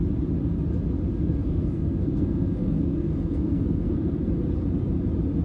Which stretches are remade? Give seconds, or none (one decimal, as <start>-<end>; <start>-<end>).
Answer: 1.1-4.3